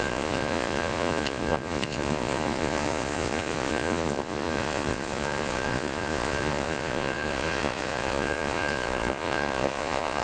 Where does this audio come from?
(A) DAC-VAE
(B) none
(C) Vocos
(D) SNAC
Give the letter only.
C